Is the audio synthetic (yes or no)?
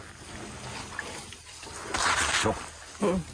no